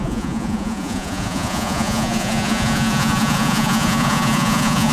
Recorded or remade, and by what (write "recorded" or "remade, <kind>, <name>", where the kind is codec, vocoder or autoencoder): remade, vocoder, Vocos